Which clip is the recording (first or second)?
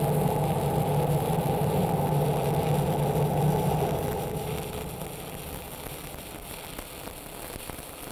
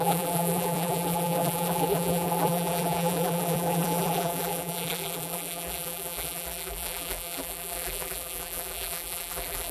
first